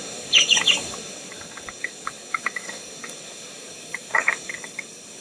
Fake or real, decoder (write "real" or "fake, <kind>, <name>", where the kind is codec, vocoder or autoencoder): fake, codec, DAC